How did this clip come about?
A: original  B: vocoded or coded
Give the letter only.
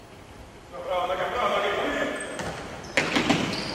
A